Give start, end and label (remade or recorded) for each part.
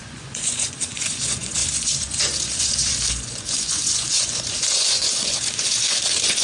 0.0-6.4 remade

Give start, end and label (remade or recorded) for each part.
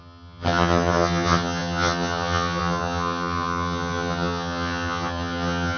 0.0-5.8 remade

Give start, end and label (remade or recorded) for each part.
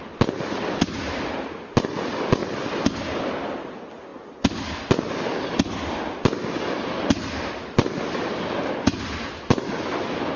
0.0-10.4 recorded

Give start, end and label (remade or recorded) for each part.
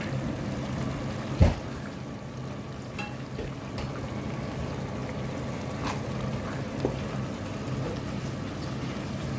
0.0-9.4 recorded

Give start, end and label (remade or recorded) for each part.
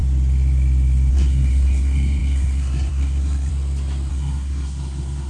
0.0-1.1 recorded; 1.1-3.5 remade; 3.5-4.1 recorded; 4.1-5.3 remade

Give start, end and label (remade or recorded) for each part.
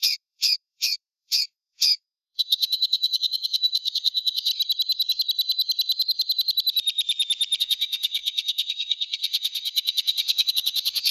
0.0-4.5 remade; 4.5-7.6 recorded; 7.6-11.1 remade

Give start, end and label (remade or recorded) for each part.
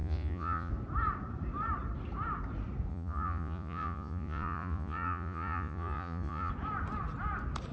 0.0-0.7 remade; 0.7-2.9 recorded; 2.9-6.5 remade; 6.5-7.7 recorded